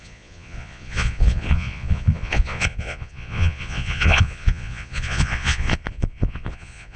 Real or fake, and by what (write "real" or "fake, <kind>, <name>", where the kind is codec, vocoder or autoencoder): fake, vocoder, Vocos